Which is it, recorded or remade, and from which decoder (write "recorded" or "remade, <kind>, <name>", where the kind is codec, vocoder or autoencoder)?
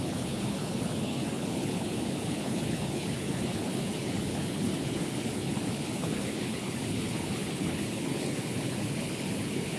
remade, codec, HILCodec